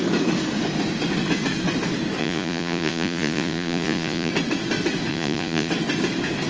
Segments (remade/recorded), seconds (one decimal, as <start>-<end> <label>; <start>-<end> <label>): 0.0-2.2 recorded; 2.2-4.3 remade; 4.3-5.1 recorded; 5.1-5.7 remade; 5.7-6.5 recorded